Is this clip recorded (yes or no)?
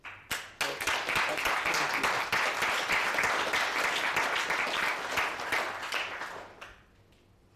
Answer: yes